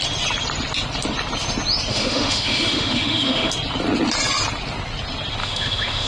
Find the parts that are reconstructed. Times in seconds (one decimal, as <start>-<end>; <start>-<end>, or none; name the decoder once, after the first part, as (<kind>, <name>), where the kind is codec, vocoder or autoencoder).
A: 1.9-3.5 (autoencoder, DAC-VAE); 5.4-6.1